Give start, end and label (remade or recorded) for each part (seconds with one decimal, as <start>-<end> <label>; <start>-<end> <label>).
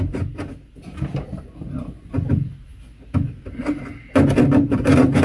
0.0-5.2 recorded